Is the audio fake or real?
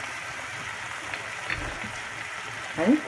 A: real